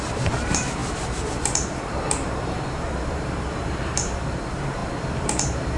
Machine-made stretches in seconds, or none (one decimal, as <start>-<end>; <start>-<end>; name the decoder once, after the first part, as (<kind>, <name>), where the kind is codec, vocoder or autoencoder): 0.0-5.8 (vocoder, BigVGAN v2)

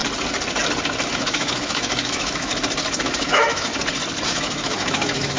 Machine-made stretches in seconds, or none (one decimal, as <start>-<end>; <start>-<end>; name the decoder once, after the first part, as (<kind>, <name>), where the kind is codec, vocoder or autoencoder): 1.1-2.5 (autoencoder, DAC-VAE); 3.0-3.7; 4.3-5.4

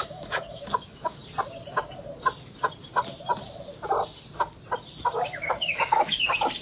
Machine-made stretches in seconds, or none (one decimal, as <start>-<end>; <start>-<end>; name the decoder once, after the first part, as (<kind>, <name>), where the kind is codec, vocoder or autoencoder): 0.0-1.2 (autoencoder, DAC-VAE); 5.2-6.6

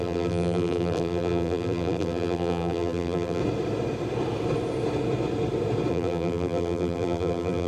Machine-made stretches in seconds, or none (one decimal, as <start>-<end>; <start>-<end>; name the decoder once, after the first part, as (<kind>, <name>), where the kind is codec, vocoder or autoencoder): 0.0-3.4 (vocoder, BigVGAN v2); 5.9-7.7